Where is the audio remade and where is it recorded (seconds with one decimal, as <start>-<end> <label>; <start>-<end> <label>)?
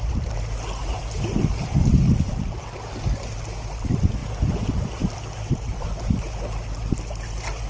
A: 0.0-7.7 recorded